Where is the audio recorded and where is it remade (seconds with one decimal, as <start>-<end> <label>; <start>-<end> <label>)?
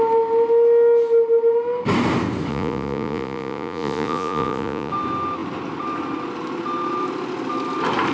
0.0-2.5 recorded; 2.5-4.9 remade; 4.9-8.1 recorded